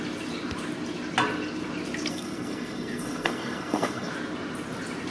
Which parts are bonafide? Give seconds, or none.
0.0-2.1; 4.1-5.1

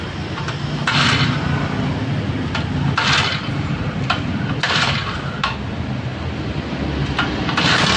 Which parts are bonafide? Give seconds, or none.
0.0-8.0

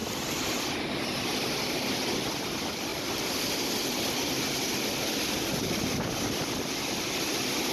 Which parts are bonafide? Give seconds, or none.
0.0-7.7

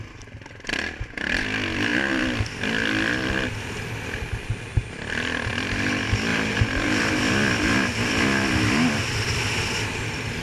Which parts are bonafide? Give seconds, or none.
0.0-6.3; 7.2-10.4